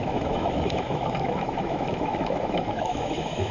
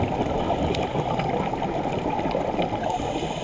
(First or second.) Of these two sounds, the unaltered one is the second